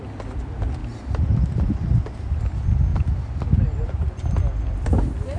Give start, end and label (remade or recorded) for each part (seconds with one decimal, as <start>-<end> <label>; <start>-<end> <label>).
0.0-0.8 recorded; 0.8-2.4 remade; 2.4-2.9 recorded; 2.9-4.4 remade; 4.4-5.4 recorded

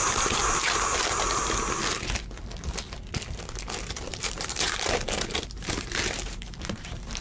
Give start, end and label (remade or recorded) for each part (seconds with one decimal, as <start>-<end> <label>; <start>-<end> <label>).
0.0-4.3 recorded; 4.3-7.2 remade

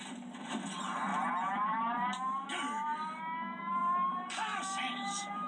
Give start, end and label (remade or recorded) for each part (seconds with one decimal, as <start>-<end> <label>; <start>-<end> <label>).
0.0-1.1 recorded; 1.1-2.5 remade; 2.5-3.8 recorded; 3.8-5.5 remade

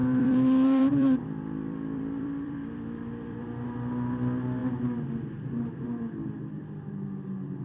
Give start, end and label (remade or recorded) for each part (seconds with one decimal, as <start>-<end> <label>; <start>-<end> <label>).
0.0-3.4 remade; 3.4-7.6 recorded

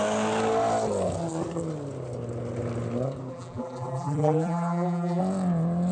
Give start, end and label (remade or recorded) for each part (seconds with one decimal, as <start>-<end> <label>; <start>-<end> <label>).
0.0-3.3 recorded; 3.3-5.2 remade; 5.2-5.9 recorded

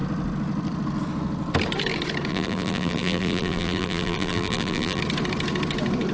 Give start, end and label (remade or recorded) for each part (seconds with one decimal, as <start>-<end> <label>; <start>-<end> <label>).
0.0-2.3 recorded; 2.3-5.0 remade; 5.0-6.1 recorded

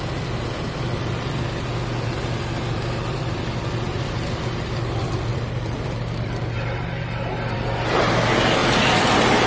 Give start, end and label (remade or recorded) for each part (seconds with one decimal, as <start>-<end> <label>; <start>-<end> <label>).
0.0-5.3 recorded; 5.3-8.0 remade; 8.0-8.6 recorded; 8.6-9.5 remade